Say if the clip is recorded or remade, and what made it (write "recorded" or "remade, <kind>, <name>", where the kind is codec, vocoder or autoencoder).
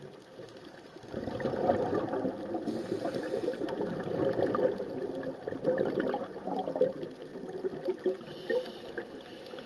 recorded